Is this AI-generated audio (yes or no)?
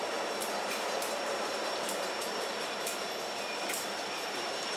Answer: yes